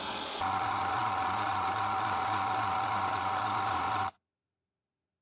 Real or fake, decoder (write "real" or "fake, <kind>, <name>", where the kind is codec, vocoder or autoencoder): fake, vocoder, Vocos